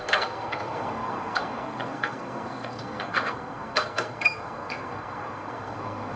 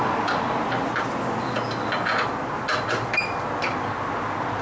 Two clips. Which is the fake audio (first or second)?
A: first